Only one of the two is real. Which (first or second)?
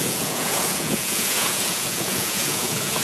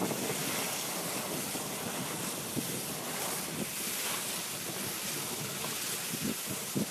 second